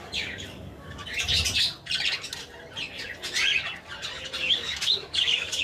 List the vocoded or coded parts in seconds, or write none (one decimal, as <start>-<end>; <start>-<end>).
0.0-1.0; 4.4-5.6